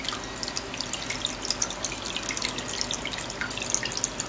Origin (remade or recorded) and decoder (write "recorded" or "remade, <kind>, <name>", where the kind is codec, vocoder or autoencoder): recorded